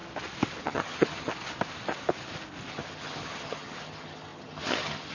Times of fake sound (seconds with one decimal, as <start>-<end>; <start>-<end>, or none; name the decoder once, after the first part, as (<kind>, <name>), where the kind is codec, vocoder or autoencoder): 0.6-1.3 (vocoder, HiFi-GAN); 2.7-5.1